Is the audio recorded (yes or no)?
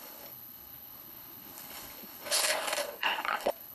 no